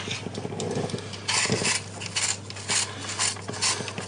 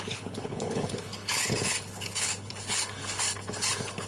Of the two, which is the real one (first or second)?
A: first